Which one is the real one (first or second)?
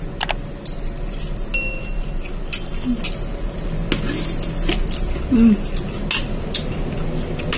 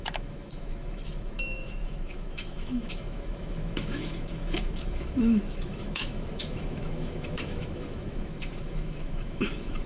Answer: first